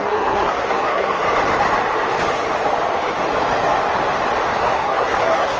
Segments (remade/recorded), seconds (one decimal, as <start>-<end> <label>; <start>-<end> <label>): 0.0-1.2 remade; 1.2-4.6 recorded; 4.6-5.6 remade